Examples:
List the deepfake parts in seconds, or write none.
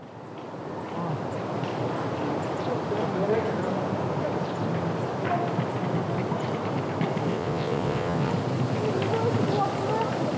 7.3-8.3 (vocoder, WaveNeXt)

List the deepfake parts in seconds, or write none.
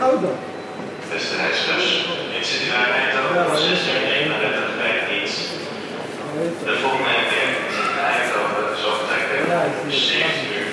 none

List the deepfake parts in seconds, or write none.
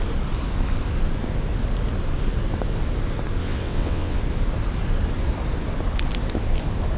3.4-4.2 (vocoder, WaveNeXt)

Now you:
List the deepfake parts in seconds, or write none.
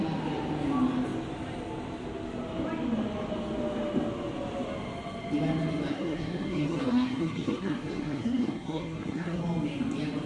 5.9-9.4 (codec, SNAC)